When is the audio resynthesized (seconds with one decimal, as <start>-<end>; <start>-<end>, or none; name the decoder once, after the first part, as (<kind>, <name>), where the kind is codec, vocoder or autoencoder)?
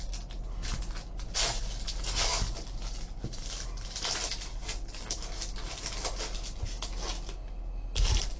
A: none